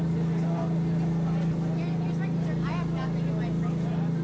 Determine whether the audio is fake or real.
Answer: real